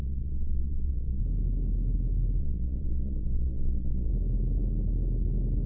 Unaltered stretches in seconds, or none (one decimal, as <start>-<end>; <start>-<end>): 1.2-2.4; 4.1-5.7